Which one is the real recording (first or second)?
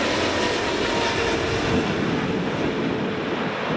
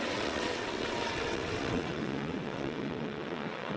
first